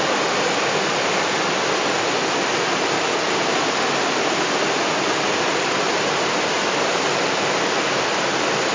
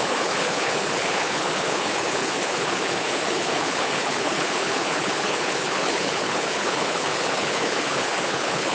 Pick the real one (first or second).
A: first